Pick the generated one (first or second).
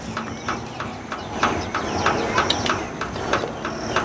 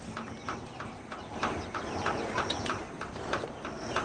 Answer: second